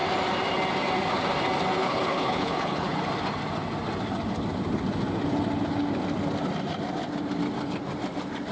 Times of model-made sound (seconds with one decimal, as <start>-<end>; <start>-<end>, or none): 1.8-3.0